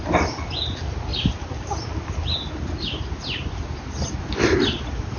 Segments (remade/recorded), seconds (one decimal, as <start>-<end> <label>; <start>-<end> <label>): 0.0-5.2 recorded